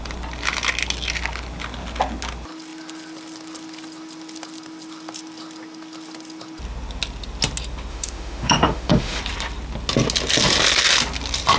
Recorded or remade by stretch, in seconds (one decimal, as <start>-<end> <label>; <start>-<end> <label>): 0.0-7.9 recorded; 7.9-9.2 remade; 9.2-11.6 recorded